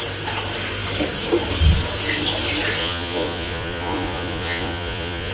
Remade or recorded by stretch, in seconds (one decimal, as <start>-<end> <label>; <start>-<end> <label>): 0.0-2.8 recorded; 2.8-5.3 remade